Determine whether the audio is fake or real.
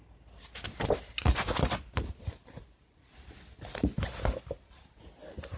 fake